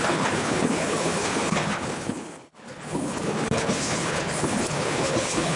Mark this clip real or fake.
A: fake